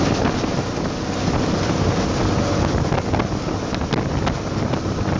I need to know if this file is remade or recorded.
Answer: recorded